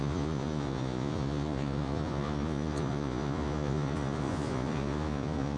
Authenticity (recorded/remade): remade